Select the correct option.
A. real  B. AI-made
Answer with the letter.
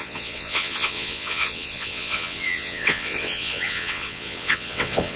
B